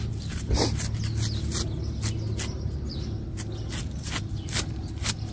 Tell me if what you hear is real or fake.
real